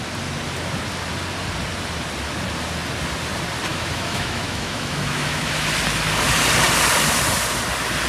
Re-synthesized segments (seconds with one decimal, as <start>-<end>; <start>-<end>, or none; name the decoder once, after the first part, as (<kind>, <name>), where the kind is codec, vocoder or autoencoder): 3.7-5.7 (autoencoder, DAC-VAE)